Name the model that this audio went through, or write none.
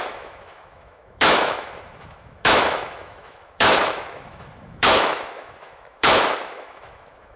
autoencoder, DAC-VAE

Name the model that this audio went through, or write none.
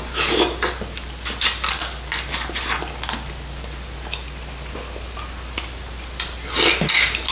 none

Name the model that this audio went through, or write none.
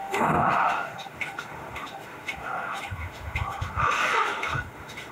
autoencoder, DAC-VAE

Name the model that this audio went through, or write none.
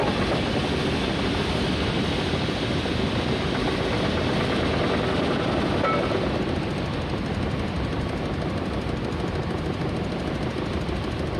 none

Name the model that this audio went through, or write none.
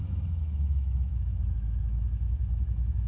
autoencoder, DAC-VAE